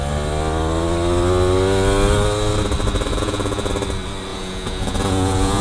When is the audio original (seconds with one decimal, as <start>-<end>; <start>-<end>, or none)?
0.0-3.1; 3.7-4.3